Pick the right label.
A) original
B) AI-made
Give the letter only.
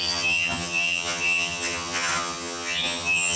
B